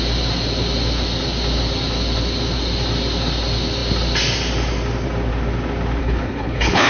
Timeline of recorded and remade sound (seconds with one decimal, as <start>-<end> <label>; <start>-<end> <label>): 0.0-6.0 recorded; 6.0-6.9 remade